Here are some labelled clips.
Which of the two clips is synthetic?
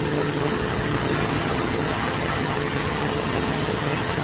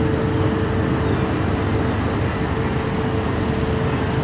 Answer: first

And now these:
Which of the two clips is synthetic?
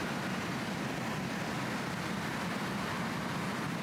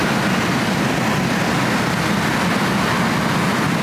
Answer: first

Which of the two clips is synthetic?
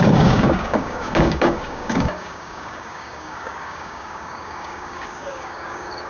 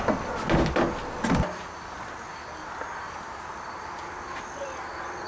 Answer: first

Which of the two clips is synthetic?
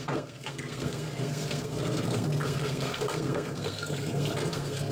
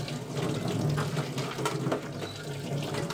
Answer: first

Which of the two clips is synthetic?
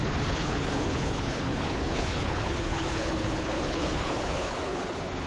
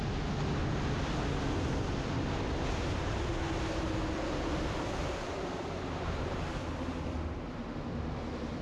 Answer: first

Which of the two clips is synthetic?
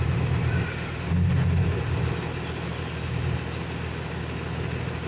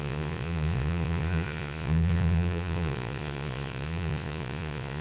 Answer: second